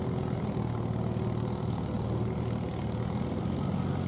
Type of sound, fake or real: real